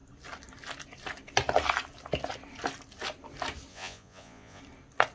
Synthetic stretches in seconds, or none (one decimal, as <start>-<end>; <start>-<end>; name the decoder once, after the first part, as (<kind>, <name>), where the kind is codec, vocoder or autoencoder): 3.7-4.6 (vocoder, Vocos)

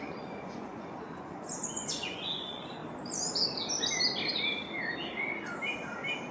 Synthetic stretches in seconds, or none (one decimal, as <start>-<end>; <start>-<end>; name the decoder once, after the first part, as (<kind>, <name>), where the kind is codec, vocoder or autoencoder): 0.0-2.8 (vocoder, Vocos)